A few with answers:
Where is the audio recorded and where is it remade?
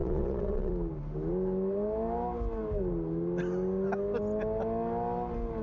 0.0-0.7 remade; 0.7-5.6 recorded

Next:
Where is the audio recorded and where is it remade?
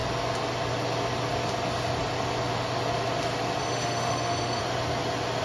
0.0-3.6 recorded; 3.6-4.6 remade; 4.6-5.4 recorded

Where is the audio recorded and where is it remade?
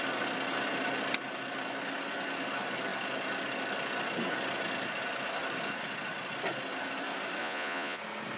0.0-7.4 recorded; 7.4-8.0 remade; 8.0-8.4 recorded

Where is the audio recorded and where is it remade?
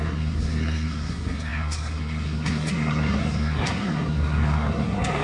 0.0-5.2 remade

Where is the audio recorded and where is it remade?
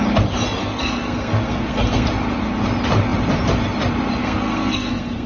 0.0-0.6 recorded; 0.6-2.1 remade; 2.1-4.2 recorded; 4.2-5.3 remade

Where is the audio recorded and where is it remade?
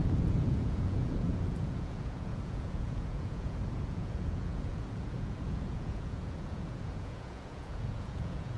0.0-8.6 remade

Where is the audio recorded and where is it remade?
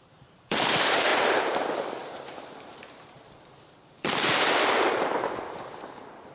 0.0-6.3 remade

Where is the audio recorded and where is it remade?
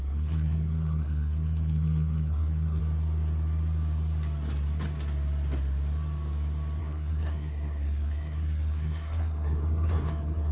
0.0-2.8 remade; 2.8-6.8 recorded; 6.8-10.5 remade